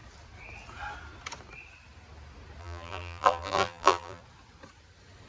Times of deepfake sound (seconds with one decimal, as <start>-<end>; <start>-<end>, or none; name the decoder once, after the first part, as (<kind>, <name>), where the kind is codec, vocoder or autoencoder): 2.6-4.2 (vocoder, BigVGAN v2)